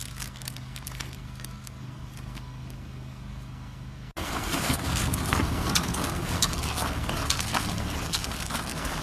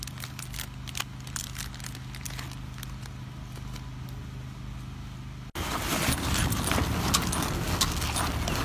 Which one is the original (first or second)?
second